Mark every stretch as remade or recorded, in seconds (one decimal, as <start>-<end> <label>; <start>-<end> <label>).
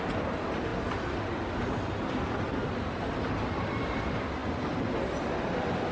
0.0-5.9 recorded